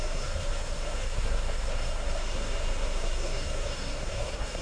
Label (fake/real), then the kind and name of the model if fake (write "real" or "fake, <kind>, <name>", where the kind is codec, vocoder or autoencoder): fake, codec, SNAC